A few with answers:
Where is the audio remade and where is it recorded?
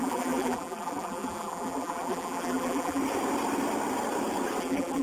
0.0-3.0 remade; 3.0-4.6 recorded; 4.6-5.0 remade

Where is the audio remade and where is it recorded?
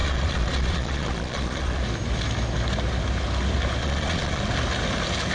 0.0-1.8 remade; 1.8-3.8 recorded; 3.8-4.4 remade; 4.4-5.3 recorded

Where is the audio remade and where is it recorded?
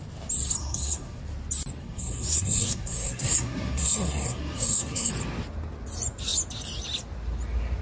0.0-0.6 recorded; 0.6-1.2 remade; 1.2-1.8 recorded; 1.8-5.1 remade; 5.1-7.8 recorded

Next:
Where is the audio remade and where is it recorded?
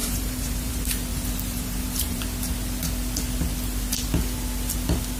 0.0-0.7 remade; 0.7-1.1 recorded; 1.1-2.2 remade; 2.2-5.2 recorded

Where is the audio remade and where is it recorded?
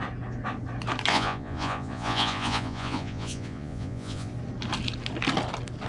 0.0-1.1 recorded; 1.1-4.3 remade; 4.3-5.9 recorded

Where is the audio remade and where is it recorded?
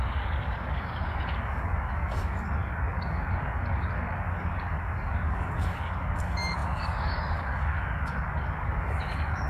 0.0-9.5 remade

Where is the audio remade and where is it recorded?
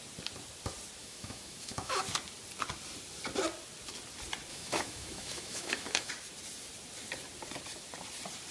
0.0-1.0 recorded; 1.0-2.0 remade; 2.0-4.5 recorded; 4.5-6.1 remade; 6.1-8.5 recorded